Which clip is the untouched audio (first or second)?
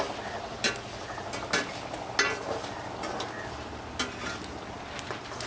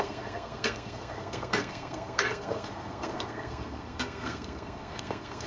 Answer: first